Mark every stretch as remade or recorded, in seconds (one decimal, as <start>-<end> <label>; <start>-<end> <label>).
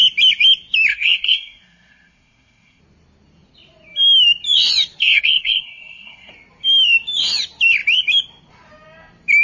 0.0-0.9 recorded; 0.9-2.8 remade; 2.8-5.0 recorded; 5.0-6.3 remade; 6.3-9.4 recorded